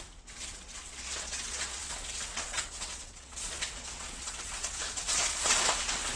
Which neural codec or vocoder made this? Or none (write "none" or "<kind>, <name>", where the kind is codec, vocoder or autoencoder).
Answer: vocoder, WaveNeXt